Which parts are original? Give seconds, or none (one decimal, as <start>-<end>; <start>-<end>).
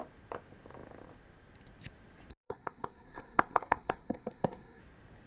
0.0-2.3; 4.8-5.3